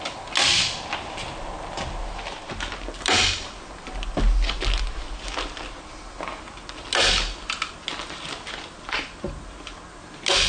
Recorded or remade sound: recorded